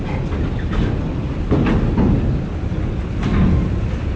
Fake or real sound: real